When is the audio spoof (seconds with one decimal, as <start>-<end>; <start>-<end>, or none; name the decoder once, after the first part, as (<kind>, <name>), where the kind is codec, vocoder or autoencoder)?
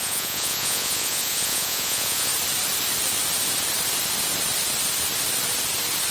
0.0-2.3 (vocoder, Vocos)